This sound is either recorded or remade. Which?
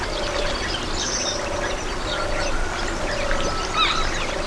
recorded